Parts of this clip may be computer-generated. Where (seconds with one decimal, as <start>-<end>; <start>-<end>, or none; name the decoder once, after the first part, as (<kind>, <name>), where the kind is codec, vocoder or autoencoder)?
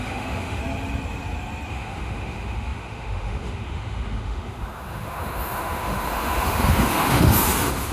0.0-0.6 (autoencoder, DAC-VAE); 1.7-7.9